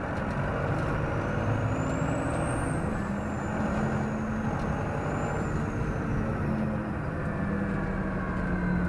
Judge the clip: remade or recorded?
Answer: recorded